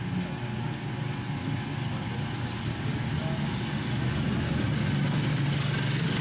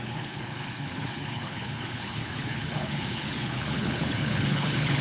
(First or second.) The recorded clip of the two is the first